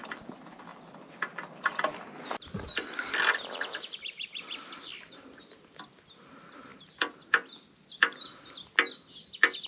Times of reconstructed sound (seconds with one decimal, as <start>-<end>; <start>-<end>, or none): 0.7-5.4; 6.7-8.4